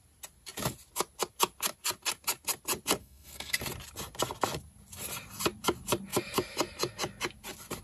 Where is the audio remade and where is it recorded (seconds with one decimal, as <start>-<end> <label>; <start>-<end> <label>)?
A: 0.0-3.0 recorded; 3.0-3.6 remade; 3.6-7.8 recorded